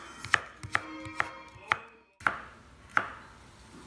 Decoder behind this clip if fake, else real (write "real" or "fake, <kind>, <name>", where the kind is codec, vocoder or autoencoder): real